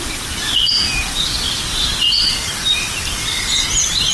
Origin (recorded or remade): recorded